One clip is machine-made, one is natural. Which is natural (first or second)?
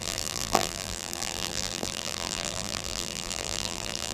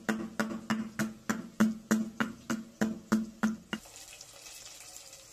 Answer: second